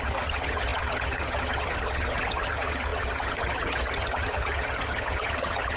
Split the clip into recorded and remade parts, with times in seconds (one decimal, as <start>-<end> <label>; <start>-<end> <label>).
0.0-5.8 remade